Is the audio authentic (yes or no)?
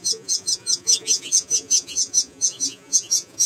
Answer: no